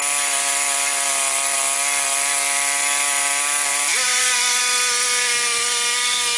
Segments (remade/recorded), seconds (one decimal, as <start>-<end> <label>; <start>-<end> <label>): 0.0-3.7 recorded; 3.7-4.6 remade; 4.6-6.4 recorded